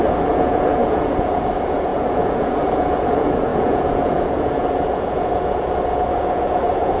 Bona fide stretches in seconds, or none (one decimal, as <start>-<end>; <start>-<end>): none

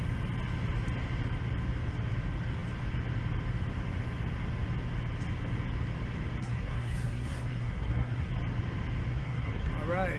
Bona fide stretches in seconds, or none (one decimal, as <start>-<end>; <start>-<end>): 0.0-6.4; 8.3-9.1; 9.7-10.2